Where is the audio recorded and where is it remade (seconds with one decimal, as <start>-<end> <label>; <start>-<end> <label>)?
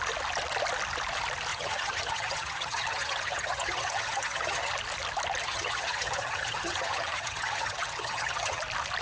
0.0-1.5 recorded; 1.5-4.7 remade; 4.7-5.4 recorded; 5.4-8.6 remade; 8.6-9.0 recorded